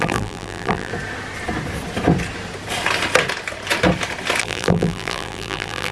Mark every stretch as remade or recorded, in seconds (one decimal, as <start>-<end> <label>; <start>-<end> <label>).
0.0-0.9 remade; 0.9-4.4 recorded; 4.4-5.9 remade